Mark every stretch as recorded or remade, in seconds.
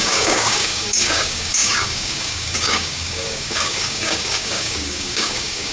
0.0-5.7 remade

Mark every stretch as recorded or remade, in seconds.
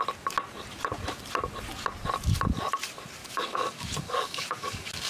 0.0-3.2 recorded; 3.2-5.1 remade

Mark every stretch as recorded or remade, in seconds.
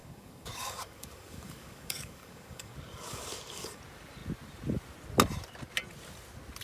0.0-3.8 remade; 3.8-6.6 recorded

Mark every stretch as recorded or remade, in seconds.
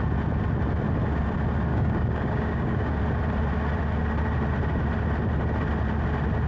0.0-1.7 recorded; 1.7-3.0 remade; 3.0-6.5 recorded